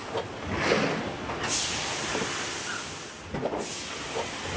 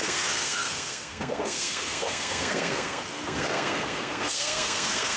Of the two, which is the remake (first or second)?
second